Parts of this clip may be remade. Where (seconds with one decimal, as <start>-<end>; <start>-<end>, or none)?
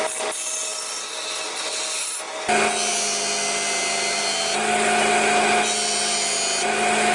none